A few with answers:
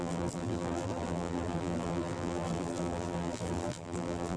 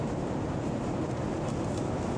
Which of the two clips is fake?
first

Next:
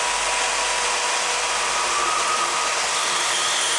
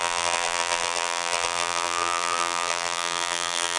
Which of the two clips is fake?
second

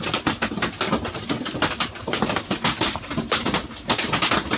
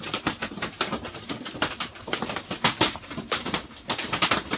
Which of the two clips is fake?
second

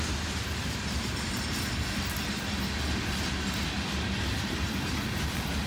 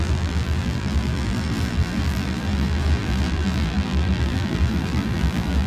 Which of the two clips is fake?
second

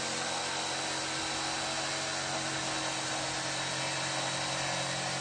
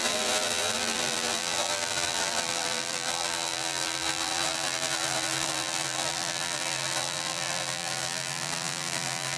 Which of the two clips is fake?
second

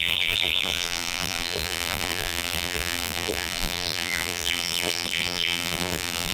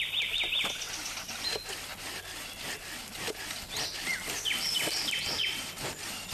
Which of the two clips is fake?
first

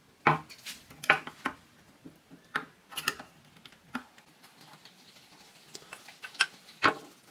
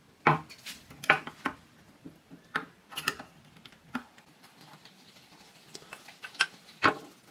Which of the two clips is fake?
second